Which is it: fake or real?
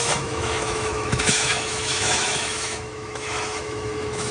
fake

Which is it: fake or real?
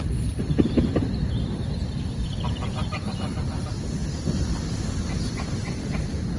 real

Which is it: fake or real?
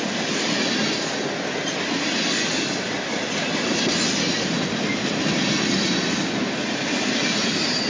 real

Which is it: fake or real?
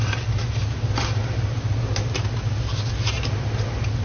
real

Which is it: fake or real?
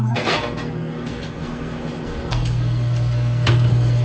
fake